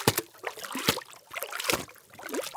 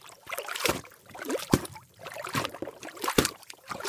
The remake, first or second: second